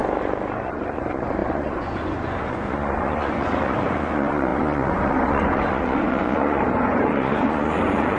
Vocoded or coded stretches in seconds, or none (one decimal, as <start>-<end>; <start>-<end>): 0.6-8.2